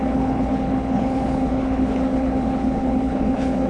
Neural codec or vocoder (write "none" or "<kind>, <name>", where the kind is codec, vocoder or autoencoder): codec, HILCodec